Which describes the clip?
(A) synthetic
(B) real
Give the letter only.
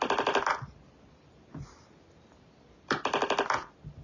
B